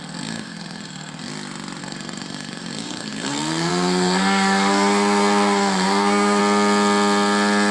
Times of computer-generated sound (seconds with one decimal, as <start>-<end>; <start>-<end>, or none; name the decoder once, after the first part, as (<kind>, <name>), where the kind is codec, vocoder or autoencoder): 0.0-1.3 (codec, SNAC); 1.8-6.4